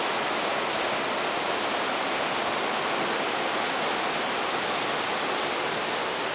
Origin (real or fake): real